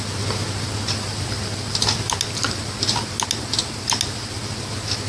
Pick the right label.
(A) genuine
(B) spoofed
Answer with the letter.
A